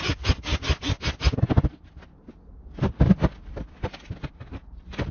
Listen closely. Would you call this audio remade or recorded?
recorded